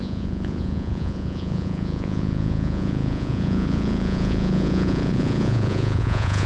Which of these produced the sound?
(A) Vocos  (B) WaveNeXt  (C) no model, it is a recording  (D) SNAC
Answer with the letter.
A